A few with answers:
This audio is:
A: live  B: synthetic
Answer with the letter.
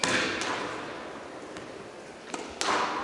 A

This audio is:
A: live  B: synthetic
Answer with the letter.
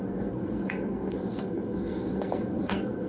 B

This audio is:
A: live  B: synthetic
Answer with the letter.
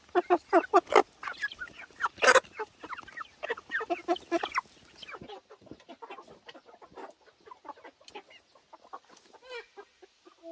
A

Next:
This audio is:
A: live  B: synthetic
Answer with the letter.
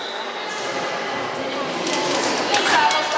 A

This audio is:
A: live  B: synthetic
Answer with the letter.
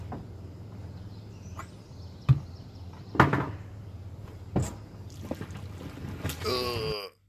A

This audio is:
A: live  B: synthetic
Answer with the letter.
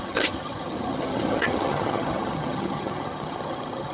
B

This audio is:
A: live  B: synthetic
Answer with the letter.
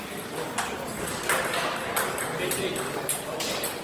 A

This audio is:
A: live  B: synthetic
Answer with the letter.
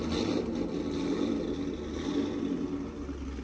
A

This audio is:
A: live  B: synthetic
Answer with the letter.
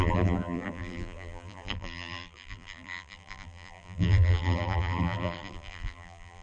B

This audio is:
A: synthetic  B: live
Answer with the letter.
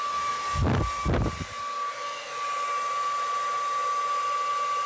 B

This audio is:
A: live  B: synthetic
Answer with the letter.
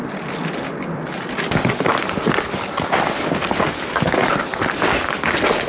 A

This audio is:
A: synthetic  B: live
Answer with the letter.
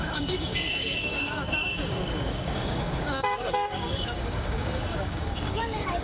A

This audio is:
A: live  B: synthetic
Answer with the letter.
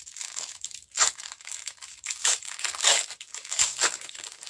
B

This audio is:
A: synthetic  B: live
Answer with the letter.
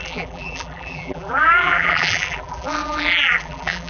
A